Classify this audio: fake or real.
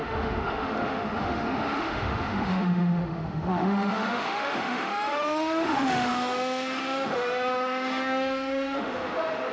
fake